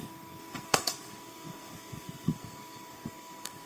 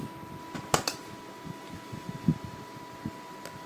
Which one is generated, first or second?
first